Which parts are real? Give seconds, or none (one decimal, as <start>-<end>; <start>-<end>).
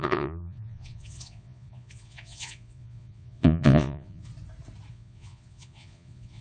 4.3-4.9